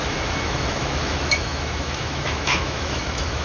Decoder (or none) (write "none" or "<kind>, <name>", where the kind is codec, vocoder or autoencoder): autoencoder, DAC-VAE